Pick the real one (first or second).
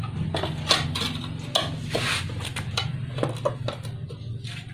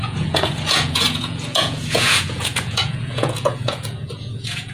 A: first